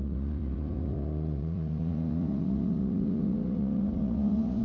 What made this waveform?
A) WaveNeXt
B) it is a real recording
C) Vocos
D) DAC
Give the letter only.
C